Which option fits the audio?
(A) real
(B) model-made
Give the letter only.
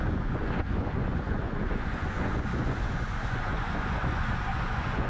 B